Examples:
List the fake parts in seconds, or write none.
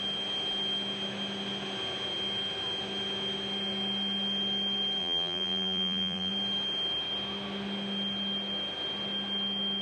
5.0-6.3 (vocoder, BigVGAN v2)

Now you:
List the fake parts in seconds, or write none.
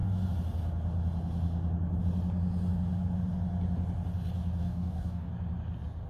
4.6-5.3 (codec, DAC)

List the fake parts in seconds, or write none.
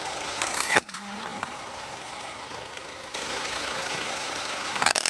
0.0-5.1 (codec, SNAC)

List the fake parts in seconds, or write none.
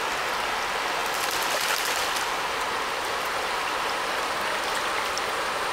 none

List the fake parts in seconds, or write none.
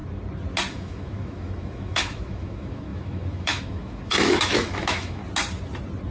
0.7-5.2 (autoencoder, DAC-VAE)